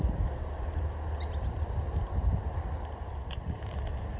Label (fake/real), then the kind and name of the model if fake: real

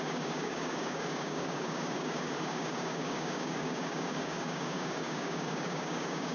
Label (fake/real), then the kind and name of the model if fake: fake, codec, DAC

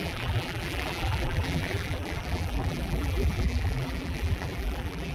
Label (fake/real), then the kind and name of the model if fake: fake, vocoder, BigVGAN v2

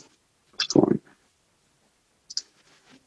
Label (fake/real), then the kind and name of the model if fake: real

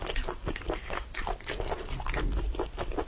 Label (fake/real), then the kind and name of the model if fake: real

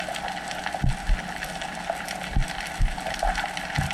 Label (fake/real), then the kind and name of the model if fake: real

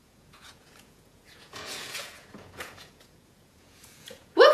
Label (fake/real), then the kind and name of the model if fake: fake, vocoder, Vocos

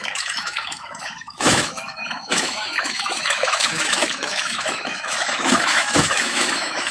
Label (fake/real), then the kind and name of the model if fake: fake, autoencoder, DAC-VAE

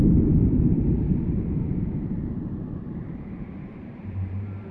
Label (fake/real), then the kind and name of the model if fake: fake, vocoder, BigVGAN v2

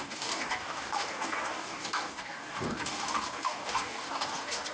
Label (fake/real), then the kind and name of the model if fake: fake, codec, DAC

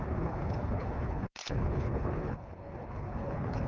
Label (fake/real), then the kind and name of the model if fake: fake, codec, HILCodec